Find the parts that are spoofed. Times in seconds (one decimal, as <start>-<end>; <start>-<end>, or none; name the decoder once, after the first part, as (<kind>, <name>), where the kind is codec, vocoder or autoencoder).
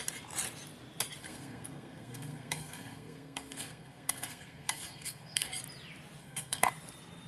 1.2-5.5 (codec, SNAC); 6.2-6.7